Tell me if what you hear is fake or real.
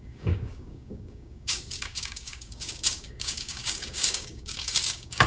fake